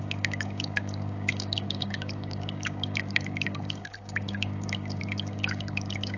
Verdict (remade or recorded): remade